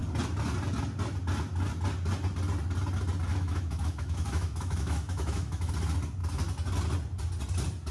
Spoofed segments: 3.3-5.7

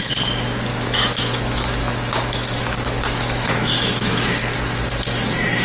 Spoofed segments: 0.7-4.1

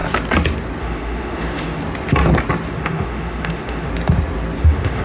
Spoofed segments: 0.8-1.8; 2.7-3.9; 4.6-5.0

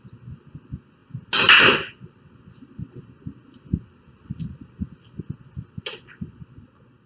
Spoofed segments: none

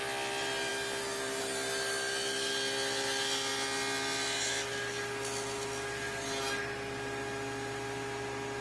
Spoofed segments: none

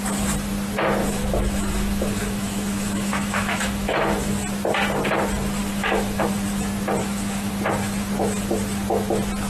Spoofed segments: 1.0-4.3; 5.6-6.3; 7.0-7.5